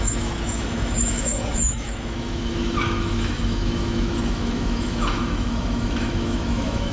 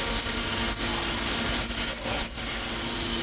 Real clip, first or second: second